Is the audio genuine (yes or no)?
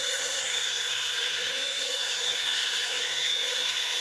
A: no